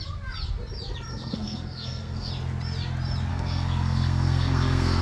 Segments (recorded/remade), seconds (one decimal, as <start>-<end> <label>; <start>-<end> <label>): 0.0-1.1 recorded; 1.1-2.3 remade; 2.3-3.3 recorded; 3.3-5.0 remade